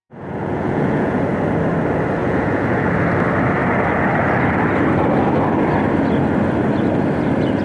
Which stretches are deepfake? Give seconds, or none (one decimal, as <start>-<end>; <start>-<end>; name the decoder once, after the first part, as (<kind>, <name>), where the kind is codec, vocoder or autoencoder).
0.0-1.2 (vocoder, Vocos); 2.2-2.9